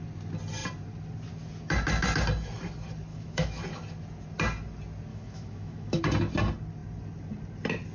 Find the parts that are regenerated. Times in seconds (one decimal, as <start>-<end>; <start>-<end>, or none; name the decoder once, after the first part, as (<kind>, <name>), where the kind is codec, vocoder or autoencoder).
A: 3.1-3.6 (autoencoder, DAC-VAE); 5.1-6.0